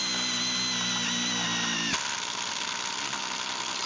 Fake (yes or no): no